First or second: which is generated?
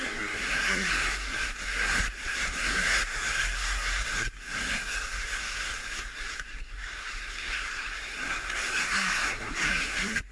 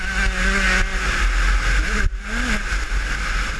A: first